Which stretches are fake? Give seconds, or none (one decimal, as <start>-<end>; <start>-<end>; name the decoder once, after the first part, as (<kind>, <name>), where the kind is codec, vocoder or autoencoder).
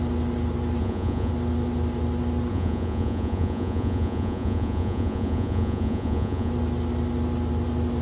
0.8-1.3 (vocoder, Vocos); 2.5-6.5